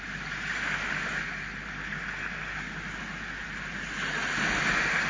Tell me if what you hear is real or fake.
real